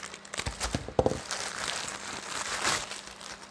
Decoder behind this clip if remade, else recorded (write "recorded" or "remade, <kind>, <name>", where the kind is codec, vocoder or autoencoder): recorded